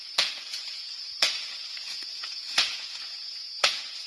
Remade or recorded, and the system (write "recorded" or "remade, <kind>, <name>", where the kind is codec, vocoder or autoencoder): remade, vocoder, Vocos